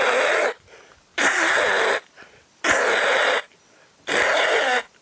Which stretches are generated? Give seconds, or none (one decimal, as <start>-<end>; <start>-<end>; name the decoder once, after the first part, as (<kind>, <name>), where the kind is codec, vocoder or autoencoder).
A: none